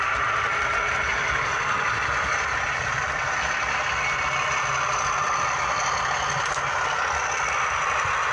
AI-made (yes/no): no